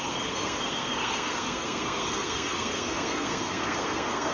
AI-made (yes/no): yes